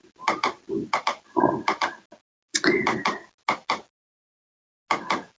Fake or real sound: real